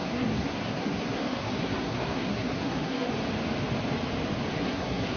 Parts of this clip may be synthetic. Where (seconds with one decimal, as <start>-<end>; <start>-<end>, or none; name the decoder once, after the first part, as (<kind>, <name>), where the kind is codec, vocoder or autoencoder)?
0.0-3.1 (codec, SNAC); 4.5-5.2